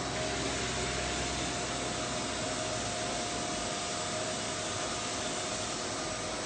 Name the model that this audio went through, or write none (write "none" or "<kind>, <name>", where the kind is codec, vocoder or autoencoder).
none